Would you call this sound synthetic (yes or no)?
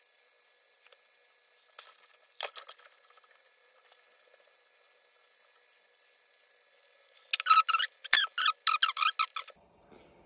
no